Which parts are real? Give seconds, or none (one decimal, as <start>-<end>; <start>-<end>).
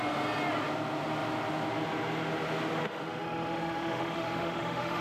0.0-2.8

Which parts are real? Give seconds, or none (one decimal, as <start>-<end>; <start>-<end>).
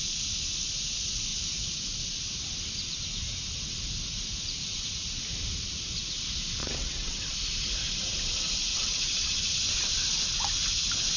0.0-6.6; 7.2-8.7; 9.5-11.2